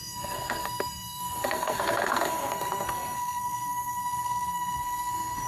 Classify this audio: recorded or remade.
remade